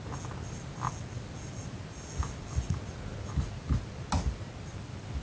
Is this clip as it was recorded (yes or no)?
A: yes